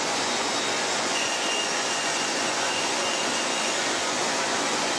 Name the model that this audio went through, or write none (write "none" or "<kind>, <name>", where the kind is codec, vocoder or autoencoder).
vocoder, Vocos